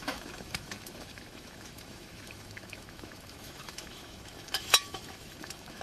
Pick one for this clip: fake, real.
fake